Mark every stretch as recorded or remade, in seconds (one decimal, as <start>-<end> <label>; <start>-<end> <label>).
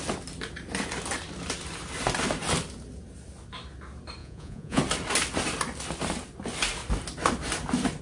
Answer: 0.0-4.2 recorded; 4.2-4.8 remade; 4.8-8.0 recorded